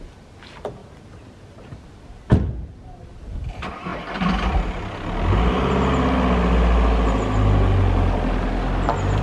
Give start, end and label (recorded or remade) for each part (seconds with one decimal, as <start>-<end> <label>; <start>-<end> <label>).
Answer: 0.0-9.2 recorded